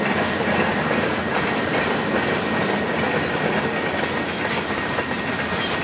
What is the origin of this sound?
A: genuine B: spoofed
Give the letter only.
A